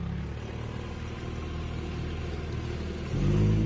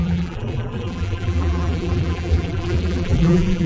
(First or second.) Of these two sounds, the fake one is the second